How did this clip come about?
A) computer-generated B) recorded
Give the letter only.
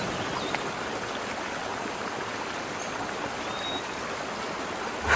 B